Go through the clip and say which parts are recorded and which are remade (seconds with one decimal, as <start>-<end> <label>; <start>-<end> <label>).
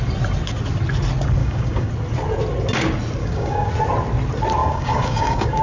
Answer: 0.0-1.4 recorded; 1.4-1.9 remade; 1.9-3.2 recorded; 3.2-3.7 remade; 3.7-4.6 recorded; 4.6-5.6 remade